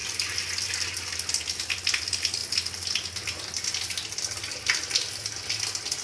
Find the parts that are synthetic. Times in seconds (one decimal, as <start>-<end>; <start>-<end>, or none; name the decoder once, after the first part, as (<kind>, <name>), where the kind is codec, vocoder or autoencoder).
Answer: none